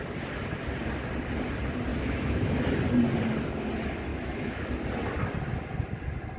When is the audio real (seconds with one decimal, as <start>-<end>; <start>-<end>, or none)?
0.0-1.9; 2.5-4.1; 4.7-6.4